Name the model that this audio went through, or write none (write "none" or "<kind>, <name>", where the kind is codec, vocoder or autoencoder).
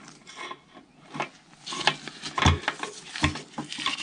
none